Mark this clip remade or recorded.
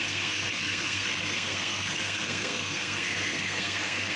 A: remade